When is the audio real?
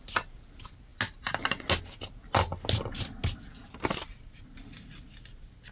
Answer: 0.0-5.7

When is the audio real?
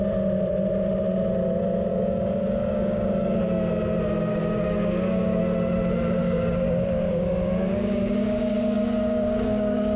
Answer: 0.0-1.9; 3.4-4.3; 5.4-6.2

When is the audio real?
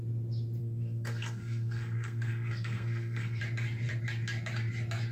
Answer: 0.0-0.6; 3.4-5.1